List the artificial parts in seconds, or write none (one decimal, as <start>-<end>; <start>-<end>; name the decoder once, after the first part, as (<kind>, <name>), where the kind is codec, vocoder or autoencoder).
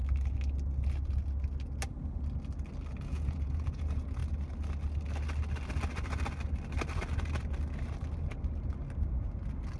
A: 3.0-4.2 (vocoder, Vocos)